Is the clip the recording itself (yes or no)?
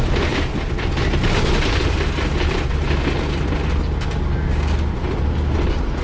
yes